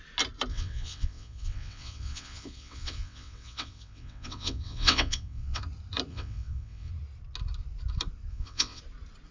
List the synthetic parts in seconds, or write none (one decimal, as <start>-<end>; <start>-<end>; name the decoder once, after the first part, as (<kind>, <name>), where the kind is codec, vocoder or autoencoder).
0.5-5.6 (vocoder, WaveNeXt); 6.1-6.9; 8.3-8.8